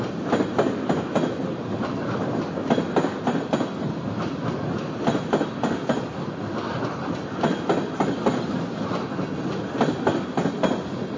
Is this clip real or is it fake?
real